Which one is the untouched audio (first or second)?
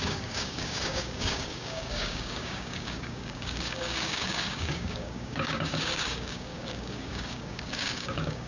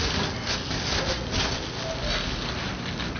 second